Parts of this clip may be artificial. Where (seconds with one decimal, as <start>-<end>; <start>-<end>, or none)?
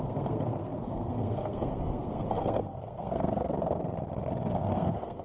0.0-3.8; 4.3-5.2